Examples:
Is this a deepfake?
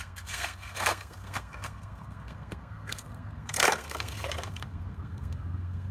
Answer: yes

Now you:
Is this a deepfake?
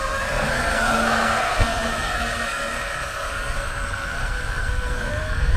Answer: yes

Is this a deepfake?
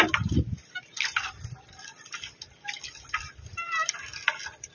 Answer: no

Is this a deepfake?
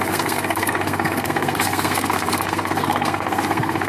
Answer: yes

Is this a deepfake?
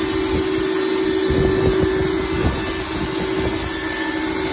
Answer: no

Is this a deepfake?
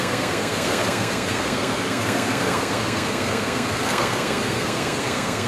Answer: yes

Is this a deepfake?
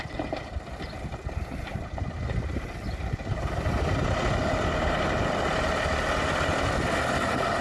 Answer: no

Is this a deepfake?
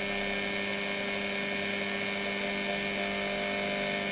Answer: no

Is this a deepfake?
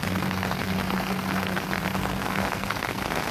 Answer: yes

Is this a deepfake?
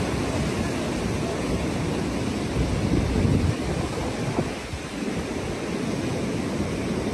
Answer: no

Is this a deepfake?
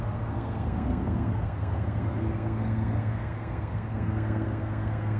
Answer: yes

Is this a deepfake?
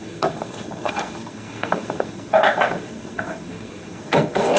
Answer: yes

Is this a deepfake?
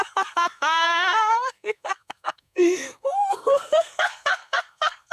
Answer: yes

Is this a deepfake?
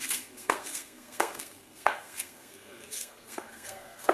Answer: yes